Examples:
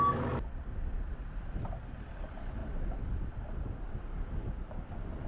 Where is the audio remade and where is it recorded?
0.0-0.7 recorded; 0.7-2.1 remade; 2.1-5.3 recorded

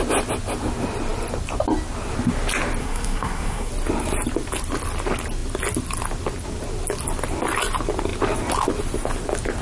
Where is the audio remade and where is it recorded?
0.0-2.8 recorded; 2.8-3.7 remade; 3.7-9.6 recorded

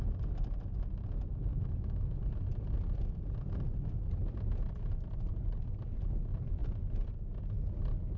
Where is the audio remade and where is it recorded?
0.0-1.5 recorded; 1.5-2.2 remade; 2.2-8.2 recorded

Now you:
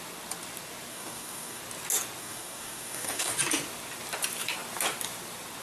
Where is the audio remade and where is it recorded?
0.0-0.9 recorded; 0.9-1.6 remade; 1.6-2.2 recorded; 2.2-3.3 remade; 3.3-5.6 recorded

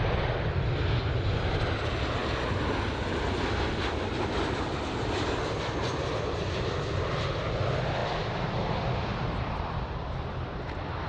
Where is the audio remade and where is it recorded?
0.0-11.1 recorded